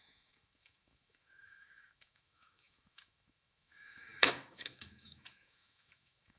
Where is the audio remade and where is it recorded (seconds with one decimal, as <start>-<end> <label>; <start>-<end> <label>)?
0.0-6.4 remade